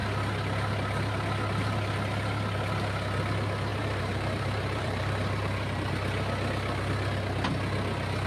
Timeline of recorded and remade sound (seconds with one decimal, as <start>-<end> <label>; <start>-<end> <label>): 0.0-3.7 recorded; 3.7-5.9 remade; 5.9-8.3 recorded